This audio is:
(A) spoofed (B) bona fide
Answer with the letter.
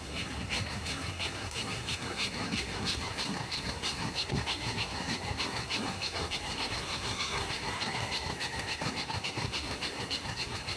A